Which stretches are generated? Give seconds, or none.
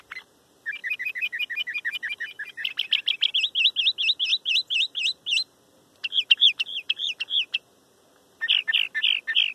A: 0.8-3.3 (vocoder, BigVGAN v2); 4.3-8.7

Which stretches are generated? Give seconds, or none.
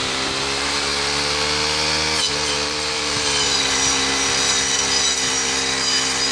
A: 0.0-0.9 (vocoder, BigVGAN v2); 2.3-6.3